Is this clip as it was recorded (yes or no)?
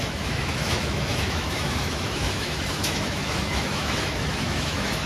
no